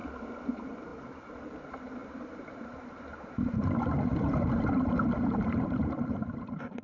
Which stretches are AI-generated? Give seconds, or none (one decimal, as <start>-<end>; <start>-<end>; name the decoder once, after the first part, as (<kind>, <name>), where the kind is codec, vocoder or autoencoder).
0.5-0.9 (vocoder, BigVGAN v2); 1.4-6.8